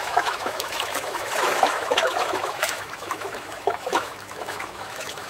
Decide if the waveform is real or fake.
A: fake